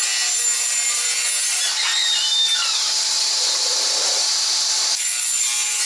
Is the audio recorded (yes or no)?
yes